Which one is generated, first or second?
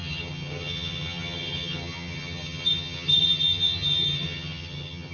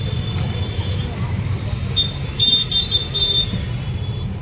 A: first